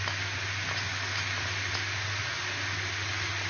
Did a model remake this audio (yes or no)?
no